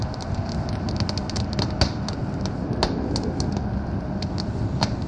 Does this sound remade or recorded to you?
recorded